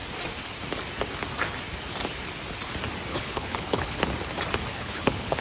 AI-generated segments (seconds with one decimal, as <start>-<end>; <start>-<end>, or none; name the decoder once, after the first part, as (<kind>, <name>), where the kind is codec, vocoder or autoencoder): 3.1-4.0 (codec, HILCodec); 4.7-5.4